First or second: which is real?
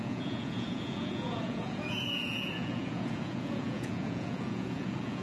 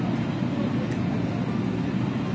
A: second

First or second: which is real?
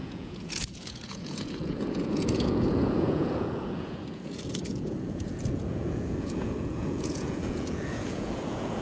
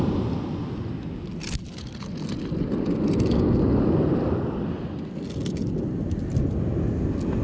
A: second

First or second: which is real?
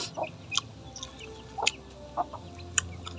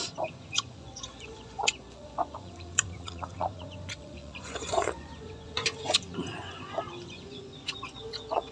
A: first